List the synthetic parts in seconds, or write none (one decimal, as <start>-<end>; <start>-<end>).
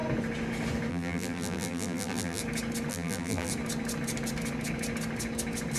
0.9-2.4; 2.9-3.5